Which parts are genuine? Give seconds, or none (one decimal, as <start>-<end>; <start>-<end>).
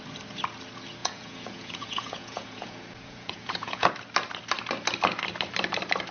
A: 0.0-1.0; 3.9-6.1